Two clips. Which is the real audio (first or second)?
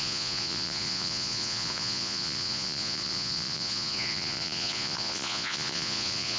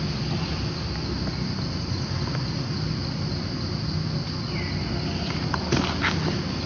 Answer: second